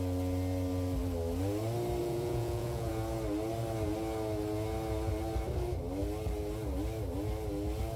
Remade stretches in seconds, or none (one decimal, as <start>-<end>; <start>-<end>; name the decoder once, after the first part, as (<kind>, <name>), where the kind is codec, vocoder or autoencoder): 2.0-2.9 (vocoder, Vocos)